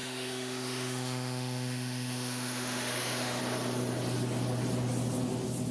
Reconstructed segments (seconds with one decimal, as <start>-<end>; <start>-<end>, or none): 0.0-3.4